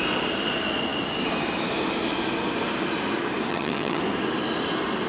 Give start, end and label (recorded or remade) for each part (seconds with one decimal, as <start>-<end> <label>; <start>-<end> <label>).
0.0-3.5 recorded; 3.5-4.0 remade; 4.0-5.1 recorded